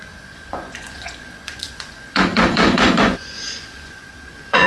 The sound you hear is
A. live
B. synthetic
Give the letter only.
B